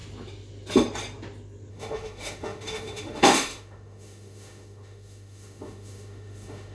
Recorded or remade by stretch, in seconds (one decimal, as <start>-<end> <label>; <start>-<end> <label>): 0.0-1.7 recorded; 1.7-6.7 remade